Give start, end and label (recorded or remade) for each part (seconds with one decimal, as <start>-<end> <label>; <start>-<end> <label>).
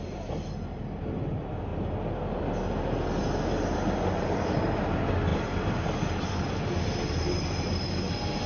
0.0-8.5 recorded